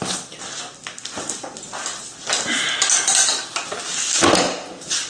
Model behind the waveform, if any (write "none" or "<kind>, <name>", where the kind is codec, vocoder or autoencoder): none